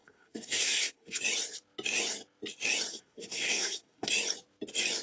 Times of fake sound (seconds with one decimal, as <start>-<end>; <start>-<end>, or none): 0.0-1.2; 2.9-4.1